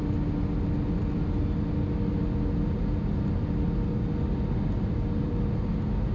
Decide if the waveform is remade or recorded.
recorded